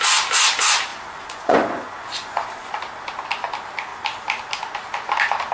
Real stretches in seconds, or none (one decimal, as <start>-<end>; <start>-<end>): 0.0-0.9; 2.7-5.5